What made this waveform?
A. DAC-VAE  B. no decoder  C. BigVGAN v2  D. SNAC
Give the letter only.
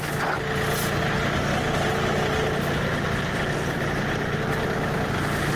B